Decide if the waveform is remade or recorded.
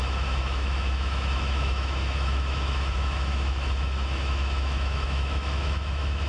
remade